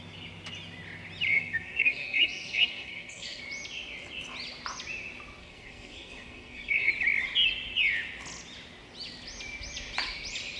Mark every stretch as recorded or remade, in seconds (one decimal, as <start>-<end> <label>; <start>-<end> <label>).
0.0-1.3 recorded; 1.3-3.4 remade; 3.4-5.4 recorded; 5.4-6.9 remade; 6.9-10.6 recorded